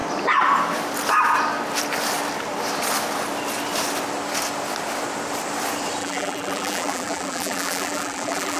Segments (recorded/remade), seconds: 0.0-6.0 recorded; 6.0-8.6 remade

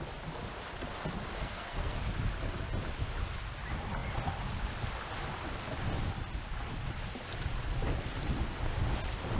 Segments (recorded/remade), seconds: 0.0-1.4 recorded; 1.4-2.0 remade; 2.0-9.4 recorded

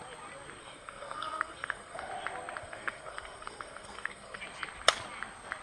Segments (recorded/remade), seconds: 0.0-0.6 recorded; 0.6-2.1 remade; 2.1-2.6 recorded; 2.6-4.4 remade; 4.4-5.6 recorded

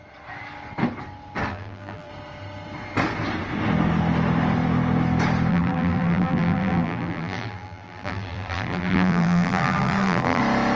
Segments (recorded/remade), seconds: 0.0-1.5 recorded; 1.5-2.1 remade; 2.1-5.5 recorded; 5.5-10.4 remade; 10.4-10.8 recorded

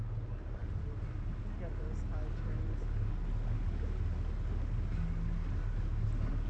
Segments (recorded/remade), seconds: 0.0-6.5 recorded